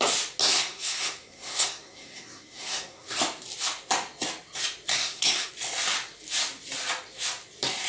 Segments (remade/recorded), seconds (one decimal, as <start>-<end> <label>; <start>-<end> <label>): 0.0-0.4 recorded; 0.4-3.2 remade; 3.2-4.9 recorded; 4.9-5.5 remade; 5.5-7.9 recorded